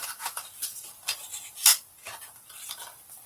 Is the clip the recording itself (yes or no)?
no